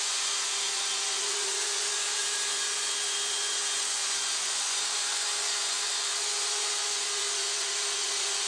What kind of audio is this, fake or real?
fake